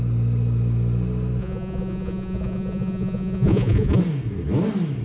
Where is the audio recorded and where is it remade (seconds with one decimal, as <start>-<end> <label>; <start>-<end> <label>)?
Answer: 0.0-1.4 recorded; 1.4-4.0 remade; 4.0-5.0 recorded